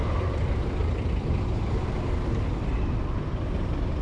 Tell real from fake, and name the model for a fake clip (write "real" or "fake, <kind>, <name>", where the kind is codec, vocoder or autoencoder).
real